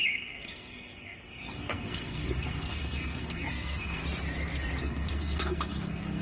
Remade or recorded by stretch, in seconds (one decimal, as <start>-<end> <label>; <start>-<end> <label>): 0.0-4.0 remade; 4.0-4.8 recorded; 4.8-6.2 remade